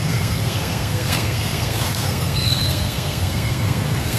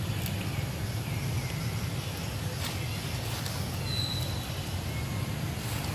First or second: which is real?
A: second